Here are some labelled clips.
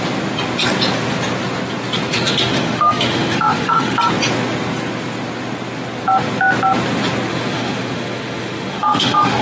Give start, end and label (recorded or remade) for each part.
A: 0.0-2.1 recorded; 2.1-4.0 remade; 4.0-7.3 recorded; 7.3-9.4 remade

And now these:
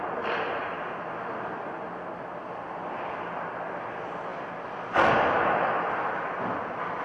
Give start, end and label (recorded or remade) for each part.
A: 0.0-7.0 recorded

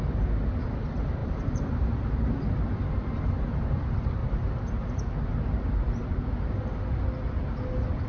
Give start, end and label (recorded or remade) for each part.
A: 0.0-1.2 recorded; 1.2-2.6 remade; 2.6-4.2 recorded; 4.2-5.0 remade; 5.0-8.1 recorded

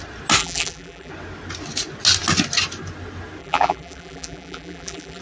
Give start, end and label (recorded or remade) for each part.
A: 0.0-0.4 recorded; 0.4-1.1 remade; 1.1-3.4 recorded; 3.4-5.2 remade

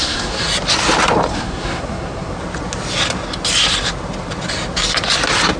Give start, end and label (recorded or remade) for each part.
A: 0.0-0.4 remade; 0.4-1.3 recorded; 1.3-2.3 remade; 2.3-5.6 recorded

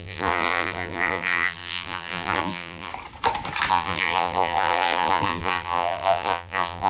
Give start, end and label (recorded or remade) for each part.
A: 0.0-2.9 remade; 2.9-3.7 recorded; 3.7-6.9 remade

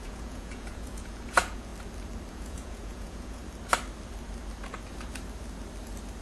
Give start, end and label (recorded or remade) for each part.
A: 0.0-1.7 remade; 1.7-2.3 recorded; 2.3-3.4 remade; 3.4-6.2 recorded